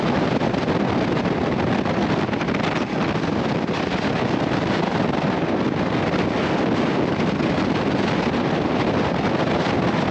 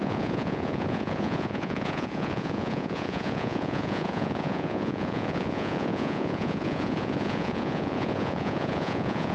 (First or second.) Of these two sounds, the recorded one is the first